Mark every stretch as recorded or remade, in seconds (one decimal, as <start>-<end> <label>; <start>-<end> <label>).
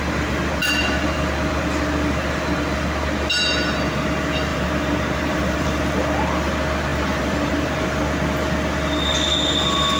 0.0-4.5 recorded; 4.5-5.8 remade; 5.8-6.9 recorded; 6.9-8.0 remade; 8.0-10.0 recorded